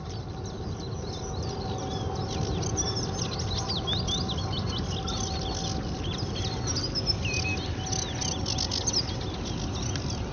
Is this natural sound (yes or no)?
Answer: yes